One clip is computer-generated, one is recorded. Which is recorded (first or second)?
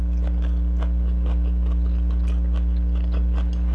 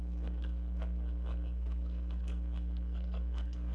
first